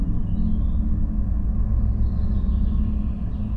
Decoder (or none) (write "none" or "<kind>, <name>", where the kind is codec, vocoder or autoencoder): none